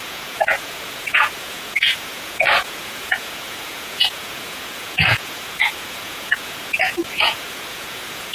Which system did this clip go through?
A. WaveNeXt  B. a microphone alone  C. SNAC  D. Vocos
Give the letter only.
D